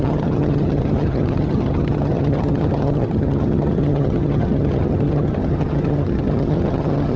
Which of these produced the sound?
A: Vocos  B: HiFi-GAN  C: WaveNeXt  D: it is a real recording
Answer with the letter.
B